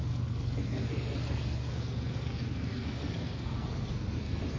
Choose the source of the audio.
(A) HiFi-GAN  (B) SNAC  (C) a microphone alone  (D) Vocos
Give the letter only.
B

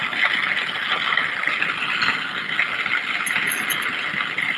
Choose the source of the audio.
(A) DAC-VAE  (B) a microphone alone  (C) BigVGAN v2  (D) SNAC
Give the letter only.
B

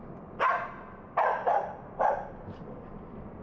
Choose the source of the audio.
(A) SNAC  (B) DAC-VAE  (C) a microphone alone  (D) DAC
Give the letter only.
C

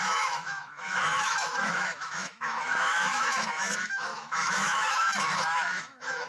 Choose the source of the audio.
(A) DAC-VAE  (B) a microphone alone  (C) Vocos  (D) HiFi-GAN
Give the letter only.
A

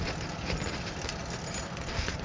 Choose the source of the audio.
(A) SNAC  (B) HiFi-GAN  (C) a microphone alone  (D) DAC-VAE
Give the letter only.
C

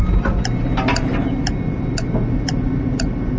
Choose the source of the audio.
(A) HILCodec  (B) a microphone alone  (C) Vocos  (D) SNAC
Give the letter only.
B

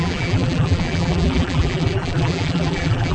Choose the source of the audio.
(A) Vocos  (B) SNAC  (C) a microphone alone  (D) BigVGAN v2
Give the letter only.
D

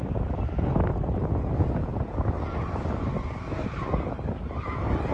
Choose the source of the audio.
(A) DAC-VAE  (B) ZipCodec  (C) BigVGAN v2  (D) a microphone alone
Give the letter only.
D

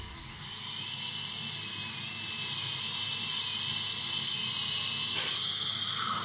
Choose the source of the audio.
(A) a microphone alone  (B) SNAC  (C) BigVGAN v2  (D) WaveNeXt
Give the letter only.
A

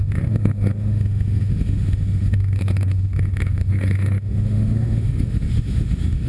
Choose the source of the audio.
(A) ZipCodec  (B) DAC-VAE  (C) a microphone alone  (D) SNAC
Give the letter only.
B